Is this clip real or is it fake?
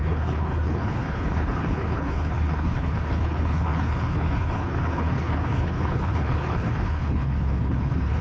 fake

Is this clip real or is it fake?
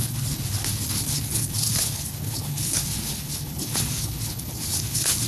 fake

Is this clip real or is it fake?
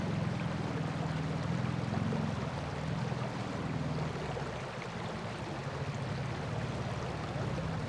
real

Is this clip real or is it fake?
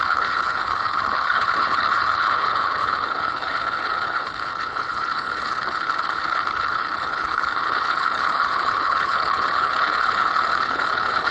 fake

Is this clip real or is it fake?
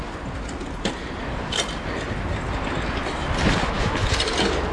real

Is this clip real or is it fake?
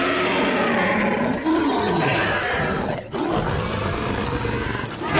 real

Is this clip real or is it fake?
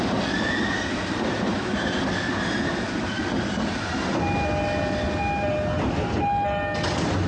real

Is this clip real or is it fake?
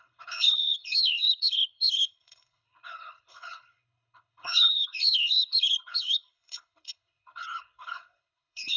fake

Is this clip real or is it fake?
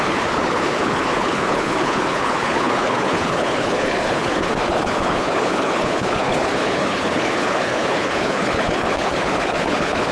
fake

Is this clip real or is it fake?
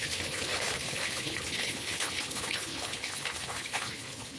fake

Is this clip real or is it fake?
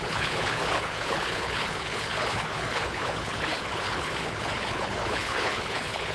fake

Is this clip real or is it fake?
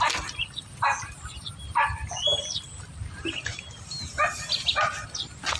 real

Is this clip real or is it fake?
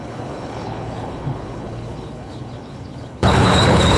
fake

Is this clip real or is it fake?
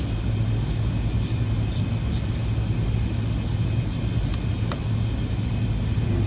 real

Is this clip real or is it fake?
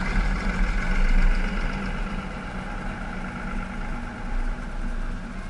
real